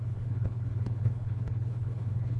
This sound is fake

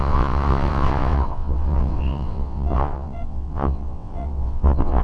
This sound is fake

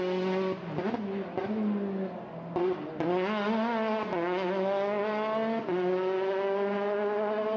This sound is real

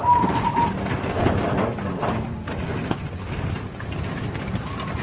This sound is real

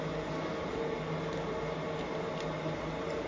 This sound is real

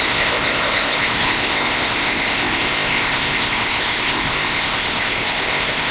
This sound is fake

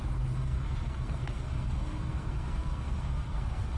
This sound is fake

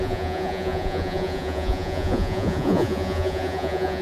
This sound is fake